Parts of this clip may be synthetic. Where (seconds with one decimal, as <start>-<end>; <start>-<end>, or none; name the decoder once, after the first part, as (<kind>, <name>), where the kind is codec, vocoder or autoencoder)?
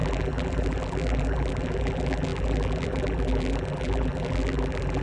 0.0-5.0 (vocoder, BigVGAN v2)